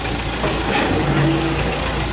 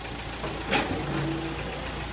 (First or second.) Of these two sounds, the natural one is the second